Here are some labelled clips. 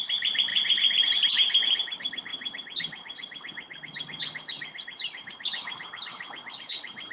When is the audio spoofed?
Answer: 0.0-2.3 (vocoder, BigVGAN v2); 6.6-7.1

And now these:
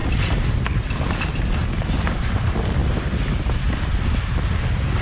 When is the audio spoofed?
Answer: none